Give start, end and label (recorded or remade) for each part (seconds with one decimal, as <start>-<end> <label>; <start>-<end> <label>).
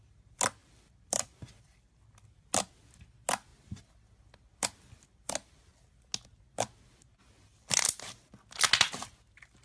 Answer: 0.0-0.6 recorded; 0.6-2.9 remade; 2.9-9.6 recorded